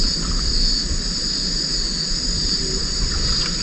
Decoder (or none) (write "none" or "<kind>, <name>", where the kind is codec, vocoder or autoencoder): none